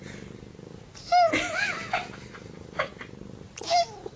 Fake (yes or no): no